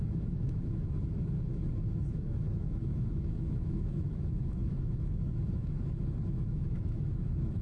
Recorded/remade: remade